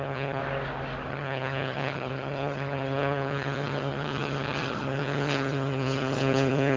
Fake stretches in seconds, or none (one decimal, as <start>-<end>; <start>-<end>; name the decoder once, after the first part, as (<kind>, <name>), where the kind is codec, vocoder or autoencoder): 0.0-0.4 (vocoder, HiFi-GAN); 1.1-6.8